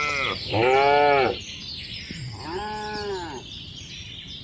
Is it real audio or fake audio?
real